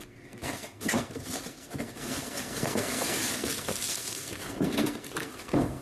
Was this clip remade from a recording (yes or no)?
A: yes